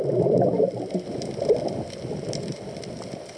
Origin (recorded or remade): remade